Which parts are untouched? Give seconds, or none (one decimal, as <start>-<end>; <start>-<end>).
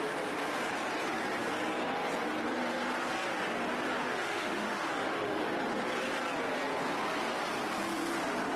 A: 0.0-4.0; 5.5-8.6